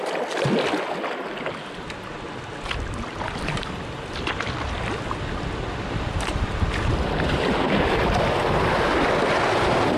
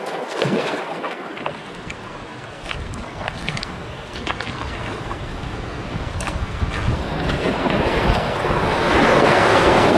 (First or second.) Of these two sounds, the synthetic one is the second